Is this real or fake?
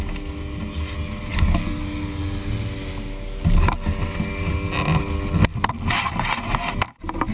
real